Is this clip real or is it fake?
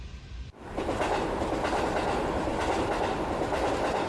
real